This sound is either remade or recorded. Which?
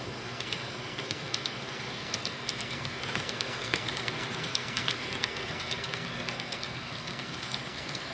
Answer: remade